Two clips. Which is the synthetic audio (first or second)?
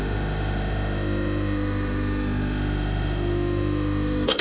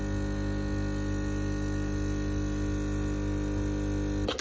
first